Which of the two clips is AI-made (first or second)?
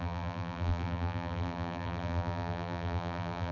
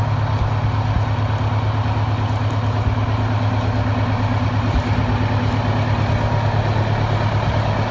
first